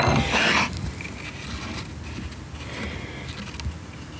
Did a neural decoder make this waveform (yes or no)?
no